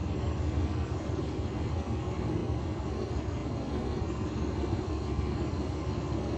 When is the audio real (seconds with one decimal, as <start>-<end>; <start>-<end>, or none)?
none